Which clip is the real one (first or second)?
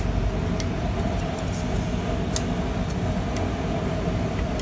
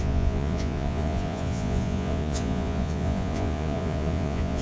first